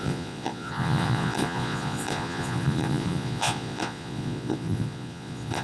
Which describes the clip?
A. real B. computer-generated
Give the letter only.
B